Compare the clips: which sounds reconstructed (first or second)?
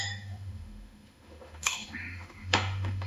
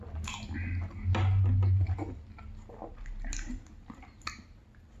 first